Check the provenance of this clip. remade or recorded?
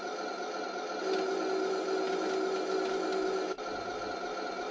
recorded